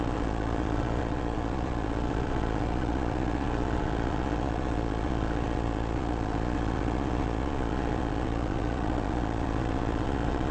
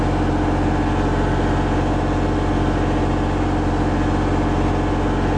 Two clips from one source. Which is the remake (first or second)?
first